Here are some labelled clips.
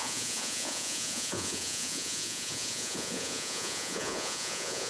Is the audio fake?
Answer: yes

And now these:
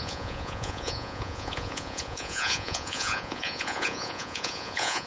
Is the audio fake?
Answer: yes